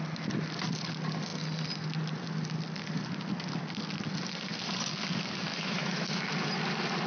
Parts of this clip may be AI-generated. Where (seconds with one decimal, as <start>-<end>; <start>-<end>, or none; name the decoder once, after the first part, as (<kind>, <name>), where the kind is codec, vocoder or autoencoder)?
5.5-6.2 (autoencoder, DAC-VAE)